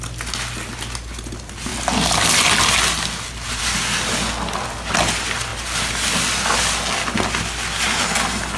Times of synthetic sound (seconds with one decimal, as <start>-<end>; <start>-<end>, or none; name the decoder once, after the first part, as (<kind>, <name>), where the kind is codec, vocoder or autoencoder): none